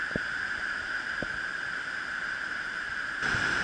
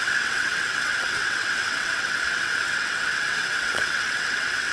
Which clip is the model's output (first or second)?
second